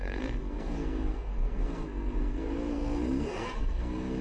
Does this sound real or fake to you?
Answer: fake